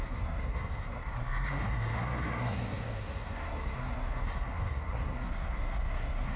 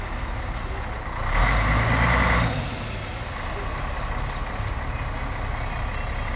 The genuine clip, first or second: second